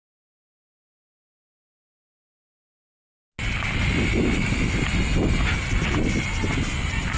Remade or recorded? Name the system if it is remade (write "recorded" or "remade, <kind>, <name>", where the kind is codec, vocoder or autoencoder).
recorded